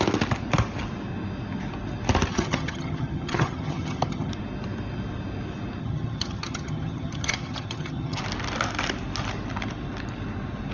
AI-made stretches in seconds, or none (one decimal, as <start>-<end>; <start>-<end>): 2.3-4.3; 5.8-8.2